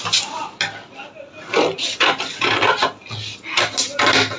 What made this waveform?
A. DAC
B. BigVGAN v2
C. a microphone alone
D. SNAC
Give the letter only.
C